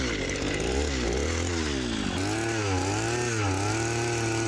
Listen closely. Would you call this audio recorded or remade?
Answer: recorded